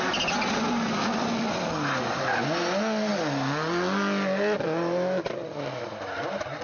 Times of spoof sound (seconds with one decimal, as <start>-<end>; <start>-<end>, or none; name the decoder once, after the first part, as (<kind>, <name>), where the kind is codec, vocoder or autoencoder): none